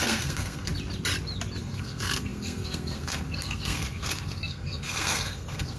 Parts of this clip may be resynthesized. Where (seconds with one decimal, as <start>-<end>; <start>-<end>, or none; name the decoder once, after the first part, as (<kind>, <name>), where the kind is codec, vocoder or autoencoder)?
0.0-0.7 (codec, SNAC); 1.6-5.8